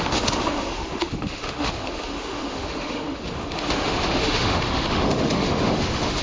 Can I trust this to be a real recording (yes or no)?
no